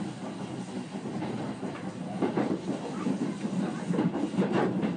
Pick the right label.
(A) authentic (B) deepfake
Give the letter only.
A